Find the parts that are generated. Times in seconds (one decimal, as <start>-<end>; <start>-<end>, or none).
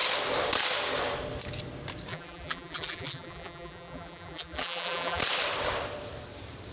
2.1-5.2